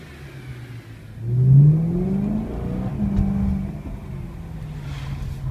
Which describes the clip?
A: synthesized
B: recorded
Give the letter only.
B